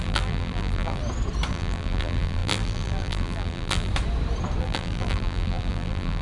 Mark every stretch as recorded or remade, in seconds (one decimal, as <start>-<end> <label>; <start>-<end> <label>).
0.0-1.0 remade; 1.0-1.5 recorded; 1.5-3.9 remade; 3.9-4.6 recorded; 4.6-6.2 remade